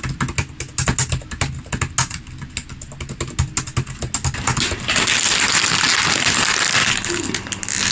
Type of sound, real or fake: real